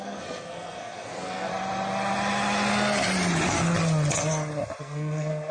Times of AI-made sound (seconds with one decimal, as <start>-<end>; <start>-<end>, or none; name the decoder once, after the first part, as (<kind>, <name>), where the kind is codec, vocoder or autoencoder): 0.0-1.5 (codec, SNAC); 4.8-5.5